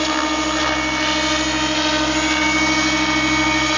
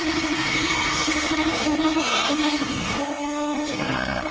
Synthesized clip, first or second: second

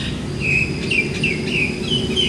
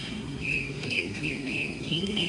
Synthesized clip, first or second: second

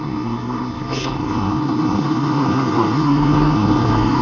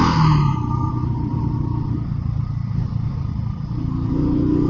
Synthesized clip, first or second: first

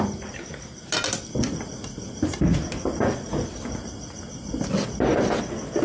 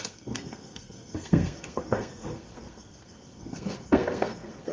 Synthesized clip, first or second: second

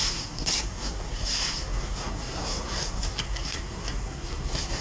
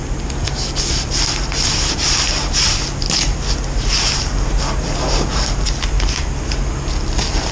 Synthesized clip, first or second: first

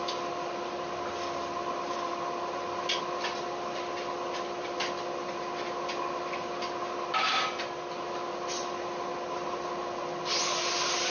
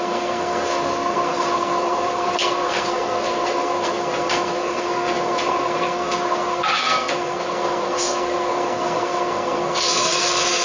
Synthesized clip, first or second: second